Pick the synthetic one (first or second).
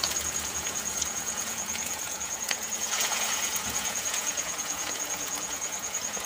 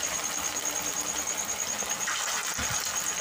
first